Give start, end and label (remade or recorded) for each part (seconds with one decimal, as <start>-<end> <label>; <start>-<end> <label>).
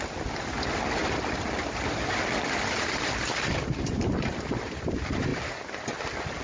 0.0-1.0 recorded; 1.0-4.3 remade; 4.3-5.3 recorded; 5.3-6.0 remade; 6.0-6.4 recorded